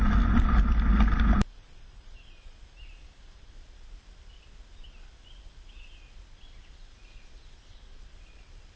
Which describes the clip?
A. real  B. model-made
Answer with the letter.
A